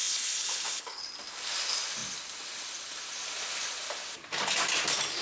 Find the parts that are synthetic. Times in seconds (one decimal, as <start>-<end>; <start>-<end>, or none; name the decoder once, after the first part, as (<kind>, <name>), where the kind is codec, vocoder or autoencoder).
0.0-1.0 (codec, HILCodec)